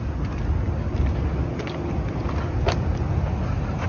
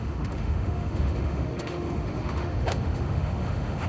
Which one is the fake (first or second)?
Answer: second